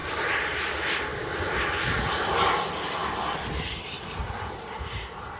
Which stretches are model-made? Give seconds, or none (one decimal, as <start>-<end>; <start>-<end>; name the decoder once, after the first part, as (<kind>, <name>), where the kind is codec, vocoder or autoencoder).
none